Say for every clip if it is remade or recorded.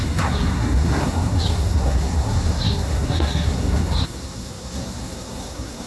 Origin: remade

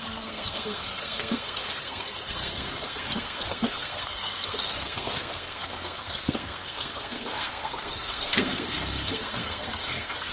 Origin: remade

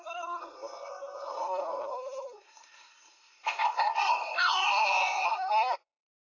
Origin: remade